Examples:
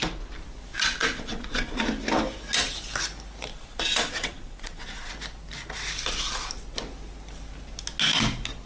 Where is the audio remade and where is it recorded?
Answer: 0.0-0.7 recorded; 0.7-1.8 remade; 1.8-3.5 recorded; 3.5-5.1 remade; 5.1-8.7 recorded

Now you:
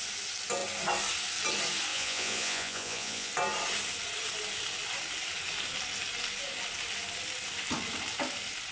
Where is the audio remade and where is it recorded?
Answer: 0.0-1.9 recorded; 1.9-3.3 remade; 3.3-8.7 recorded

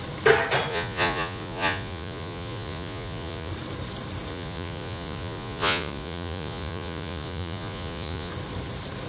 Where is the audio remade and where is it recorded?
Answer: 0.0-0.7 recorded; 0.7-3.5 remade; 3.5-4.3 recorded; 4.3-8.3 remade; 8.3-9.1 recorded

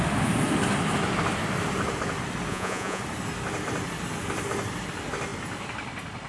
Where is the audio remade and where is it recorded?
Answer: 0.0-2.5 recorded; 2.5-3.0 remade; 3.0-6.3 recorded

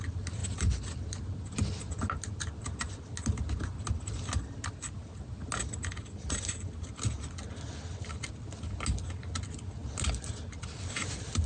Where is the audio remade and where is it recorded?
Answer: 0.0-11.5 recorded

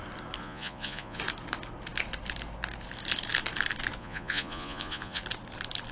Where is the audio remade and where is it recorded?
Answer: 0.0-0.4 recorded; 0.4-1.2 remade; 1.2-4.0 recorded; 4.0-5.2 remade; 5.2-5.9 recorded

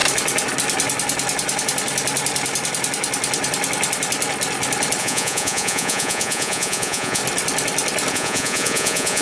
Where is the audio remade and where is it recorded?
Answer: 0.0-5.0 recorded; 5.0-7.2 remade; 7.2-8.1 recorded; 8.1-9.2 remade